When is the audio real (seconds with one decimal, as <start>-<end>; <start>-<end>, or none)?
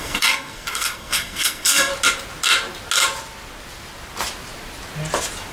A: 1.9-5.5